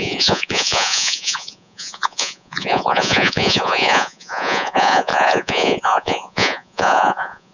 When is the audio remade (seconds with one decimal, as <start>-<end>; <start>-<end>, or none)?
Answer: 0.0-7.5